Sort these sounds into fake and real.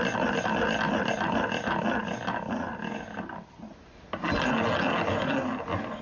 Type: real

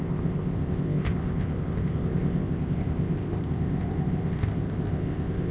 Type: fake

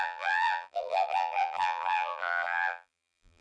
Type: fake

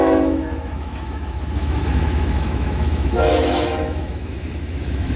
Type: fake